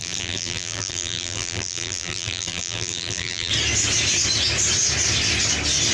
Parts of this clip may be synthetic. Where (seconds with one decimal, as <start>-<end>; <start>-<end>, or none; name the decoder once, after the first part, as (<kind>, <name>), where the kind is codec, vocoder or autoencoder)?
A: 0.0-3.5 (vocoder, BigVGAN v2)